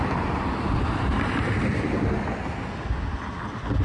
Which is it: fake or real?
real